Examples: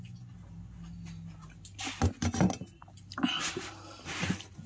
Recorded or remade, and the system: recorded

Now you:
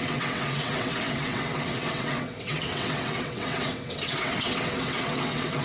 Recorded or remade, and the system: remade, vocoder, WaveNeXt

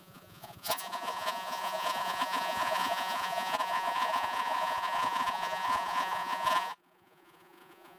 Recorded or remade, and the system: remade, vocoder, Vocos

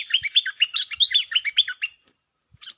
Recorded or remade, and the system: recorded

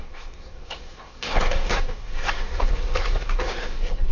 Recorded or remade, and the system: remade, codec, SNAC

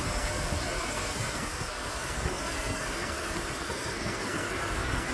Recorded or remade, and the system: remade, codec, SNAC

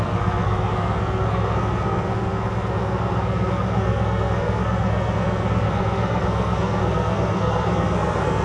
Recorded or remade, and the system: remade, codec, SNAC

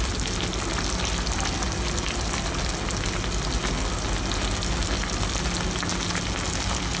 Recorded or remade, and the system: recorded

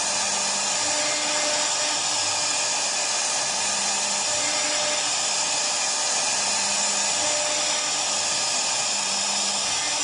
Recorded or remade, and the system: recorded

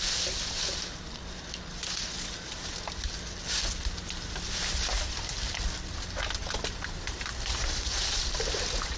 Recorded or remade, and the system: recorded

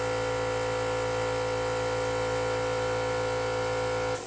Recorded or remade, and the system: recorded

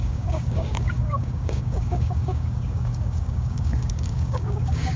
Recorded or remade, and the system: remade, codec, DAC